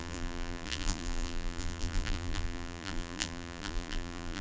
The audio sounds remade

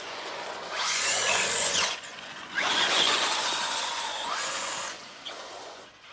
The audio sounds remade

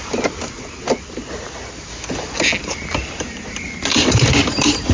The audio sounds recorded